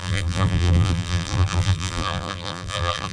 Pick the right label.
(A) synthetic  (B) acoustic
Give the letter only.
A